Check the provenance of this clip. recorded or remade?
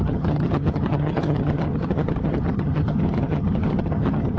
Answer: remade